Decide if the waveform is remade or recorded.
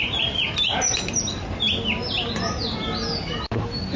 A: recorded